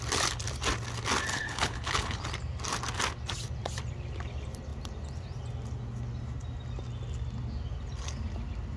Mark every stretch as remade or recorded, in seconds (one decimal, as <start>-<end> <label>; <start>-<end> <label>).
0.0-1.3 recorded; 1.3-2.2 remade; 2.2-8.8 recorded

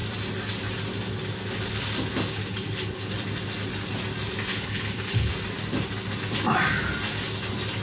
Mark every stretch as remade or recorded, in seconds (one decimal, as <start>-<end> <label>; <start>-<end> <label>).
0.0-2.3 recorded; 2.3-3.1 remade; 3.1-4.5 recorded; 4.5-5.3 remade; 5.3-7.8 recorded

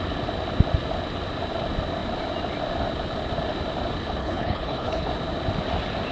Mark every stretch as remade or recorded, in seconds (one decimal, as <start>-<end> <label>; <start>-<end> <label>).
0.0-4.2 recorded; 4.2-5.1 remade; 5.1-6.1 recorded

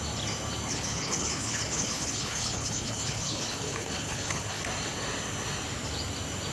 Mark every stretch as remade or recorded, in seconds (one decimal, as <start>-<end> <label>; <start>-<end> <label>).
0.0-0.7 recorded; 0.7-4.6 remade; 4.6-6.5 recorded

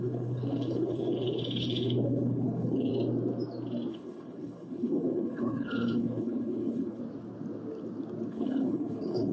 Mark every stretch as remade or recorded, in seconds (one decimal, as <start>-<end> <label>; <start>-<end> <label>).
0.0-2.9 remade; 2.9-3.9 recorded; 3.9-7.0 remade; 7.0-8.3 recorded; 8.3-9.3 remade

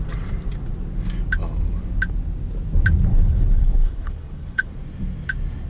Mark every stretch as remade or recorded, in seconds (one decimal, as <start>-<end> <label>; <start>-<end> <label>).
0.0-3.1 recorded; 3.1-4.7 remade; 4.7-5.7 recorded

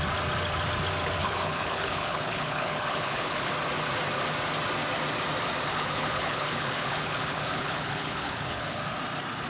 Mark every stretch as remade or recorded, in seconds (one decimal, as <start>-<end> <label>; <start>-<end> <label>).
0.0-1.2 recorded; 1.2-3.5 remade; 3.5-5.7 recorded; 5.7-8.8 remade; 8.8-9.5 recorded

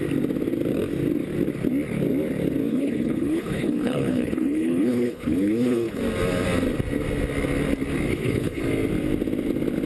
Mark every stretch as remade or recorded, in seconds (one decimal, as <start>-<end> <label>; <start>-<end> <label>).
0.0-2.7 recorded; 2.7-6.0 remade; 6.0-8.1 recorded; 8.1-8.6 remade; 8.6-9.9 recorded